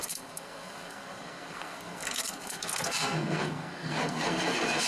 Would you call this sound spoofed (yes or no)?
yes